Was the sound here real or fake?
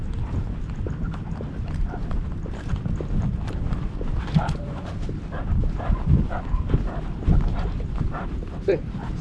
fake